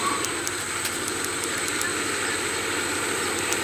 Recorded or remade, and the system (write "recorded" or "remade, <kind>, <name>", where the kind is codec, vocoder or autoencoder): recorded